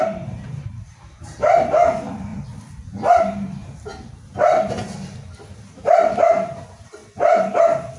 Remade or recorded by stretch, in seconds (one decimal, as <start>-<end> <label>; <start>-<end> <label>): 0.0-2.3 remade; 2.3-3.2 recorded; 3.2-3.9 remade; 3.9-5.5 recorded; 5.5-7.0 remade; 7.0-8.0 recorded